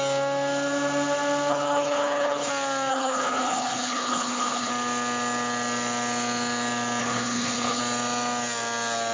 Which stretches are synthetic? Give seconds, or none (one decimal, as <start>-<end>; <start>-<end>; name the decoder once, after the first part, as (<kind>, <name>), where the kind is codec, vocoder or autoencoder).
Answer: 1.5-2.5 (codec, HILCodec); 2.9-4.7; 7.0-7.8